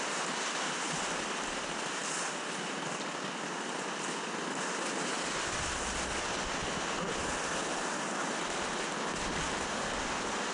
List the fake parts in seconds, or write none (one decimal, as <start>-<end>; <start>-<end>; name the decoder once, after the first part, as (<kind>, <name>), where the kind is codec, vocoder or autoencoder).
none